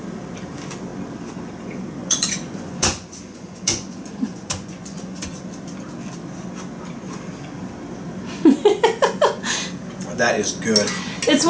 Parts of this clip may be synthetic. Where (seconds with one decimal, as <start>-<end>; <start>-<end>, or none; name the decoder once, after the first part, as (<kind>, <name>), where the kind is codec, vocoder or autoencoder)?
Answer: 2.0-5.4 (vocoder, Vocos)